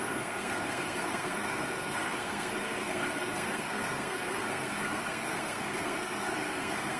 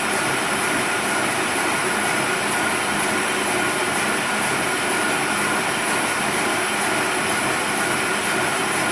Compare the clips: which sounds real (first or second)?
second